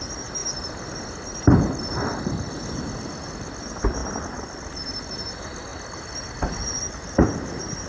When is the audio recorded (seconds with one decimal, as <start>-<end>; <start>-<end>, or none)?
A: 0.0-7.9